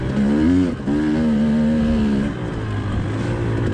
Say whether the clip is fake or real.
real